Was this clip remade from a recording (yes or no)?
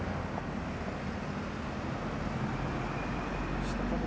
no